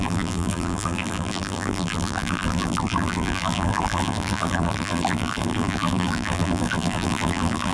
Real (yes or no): no